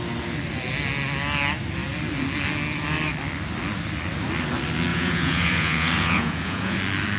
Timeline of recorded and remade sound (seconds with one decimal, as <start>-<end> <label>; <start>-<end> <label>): 0.0-4.9 recorded; 4.9-6.8 remade; 6.8-7.2 recorded